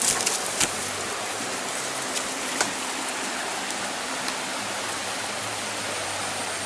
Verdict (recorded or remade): recorded